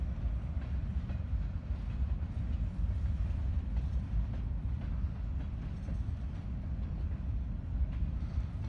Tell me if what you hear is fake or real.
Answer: fake